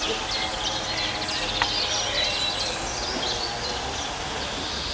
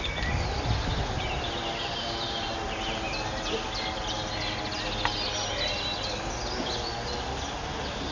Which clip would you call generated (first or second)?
first